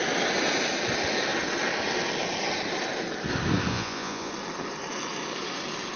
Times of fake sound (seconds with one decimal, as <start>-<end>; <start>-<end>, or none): 3.7-4.3